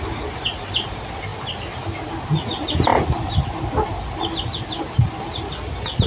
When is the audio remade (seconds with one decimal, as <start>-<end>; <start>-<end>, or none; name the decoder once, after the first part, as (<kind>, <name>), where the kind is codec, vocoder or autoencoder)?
none